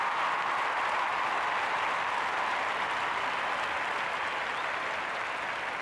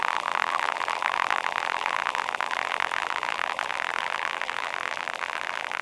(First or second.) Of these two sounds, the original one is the first